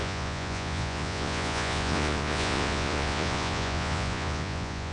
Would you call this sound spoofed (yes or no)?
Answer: yes